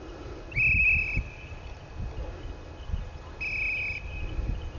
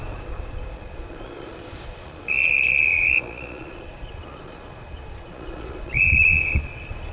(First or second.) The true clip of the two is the first